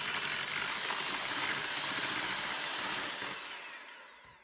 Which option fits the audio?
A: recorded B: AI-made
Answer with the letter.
A